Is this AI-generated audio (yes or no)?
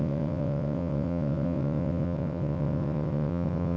yes